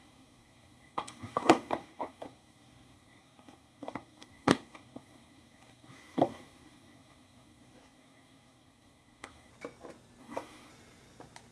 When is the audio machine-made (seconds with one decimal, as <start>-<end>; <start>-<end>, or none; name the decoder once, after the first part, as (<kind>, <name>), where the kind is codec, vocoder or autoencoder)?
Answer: 0.0-9.5 (codec, SNAC); 10.2-10.7